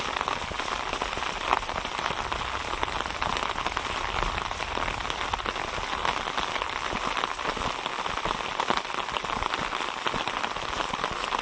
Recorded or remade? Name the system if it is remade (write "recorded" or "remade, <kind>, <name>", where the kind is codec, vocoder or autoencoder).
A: recorded